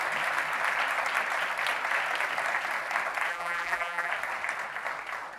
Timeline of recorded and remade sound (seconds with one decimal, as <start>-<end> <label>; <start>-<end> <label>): 0.0-3.3 recorded; 3.3-4.1 remade; 4.1-5.4 recorded